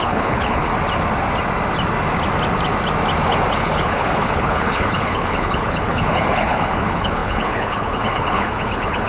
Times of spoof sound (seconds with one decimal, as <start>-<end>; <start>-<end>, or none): 0.0-0.7; 3.5-9.1